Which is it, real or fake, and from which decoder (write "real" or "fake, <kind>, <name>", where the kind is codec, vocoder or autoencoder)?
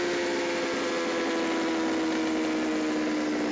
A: real